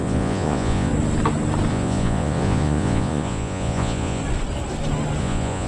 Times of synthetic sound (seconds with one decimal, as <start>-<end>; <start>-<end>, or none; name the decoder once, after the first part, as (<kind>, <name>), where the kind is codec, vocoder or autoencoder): 0.0-0.9 (vocoder, Vocos); 1.7-4.2; 5.2-5.7